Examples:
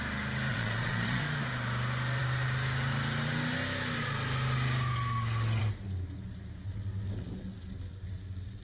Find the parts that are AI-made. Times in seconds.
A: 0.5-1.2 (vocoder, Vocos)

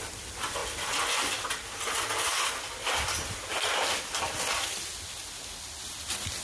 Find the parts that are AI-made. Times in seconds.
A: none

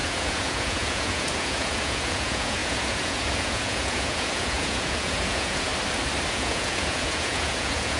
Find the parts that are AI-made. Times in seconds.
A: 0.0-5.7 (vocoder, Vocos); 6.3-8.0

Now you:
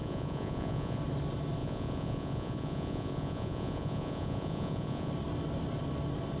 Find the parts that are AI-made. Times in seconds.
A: 0.0-1.0 (vocoder, Vocos); 1.6-5.1

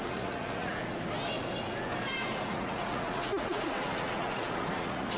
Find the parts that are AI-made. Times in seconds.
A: 0.0-0.8 (vocoder, Vocos); 2.4-5.2

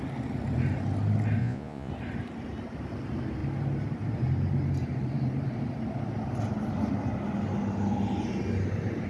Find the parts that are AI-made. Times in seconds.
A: 1.4-1.9 (vocoder, Vocos)